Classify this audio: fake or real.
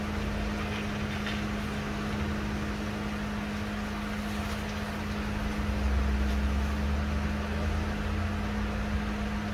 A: real